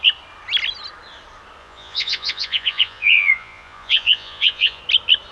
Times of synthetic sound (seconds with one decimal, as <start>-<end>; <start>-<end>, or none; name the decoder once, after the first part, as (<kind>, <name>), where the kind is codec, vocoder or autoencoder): 1.6-4.8 (vocoder, Vocos)